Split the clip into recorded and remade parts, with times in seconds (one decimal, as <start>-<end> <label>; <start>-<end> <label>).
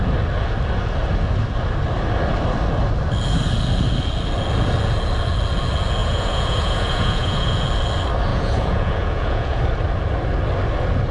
0.0-6.0 recorded; 6.0-7.6 remade; 7.6-8.3 recorded; 8.3-9.6 remade; 9.6-11.1 recorded